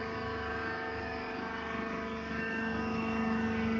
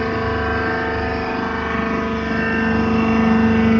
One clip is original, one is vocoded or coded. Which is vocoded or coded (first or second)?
first